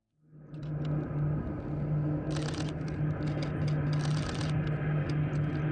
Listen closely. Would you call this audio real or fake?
real